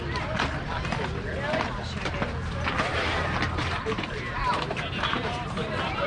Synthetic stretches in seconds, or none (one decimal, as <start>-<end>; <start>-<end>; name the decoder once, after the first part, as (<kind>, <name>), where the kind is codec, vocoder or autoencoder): 2.9-6.1 (vocoder, BigVGAN v2)